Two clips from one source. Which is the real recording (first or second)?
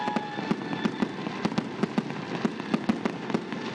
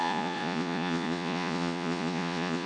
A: first